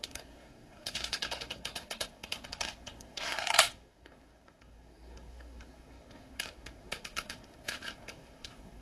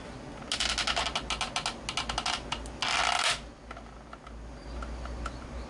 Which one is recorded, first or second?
second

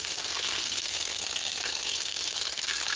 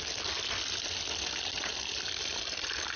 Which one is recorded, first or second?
second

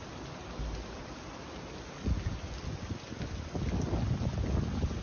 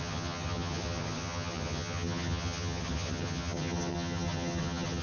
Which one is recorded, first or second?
first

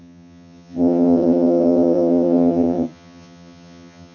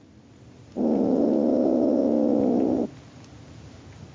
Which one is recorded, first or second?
second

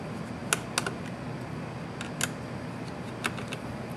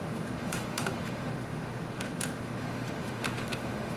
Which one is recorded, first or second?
first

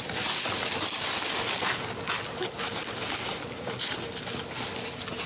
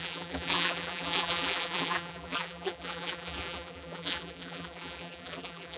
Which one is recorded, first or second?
first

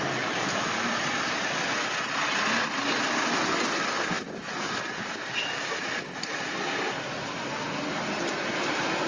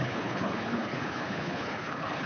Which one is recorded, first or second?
first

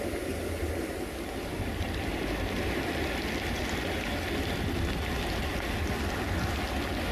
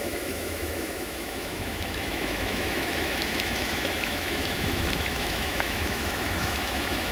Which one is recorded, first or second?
first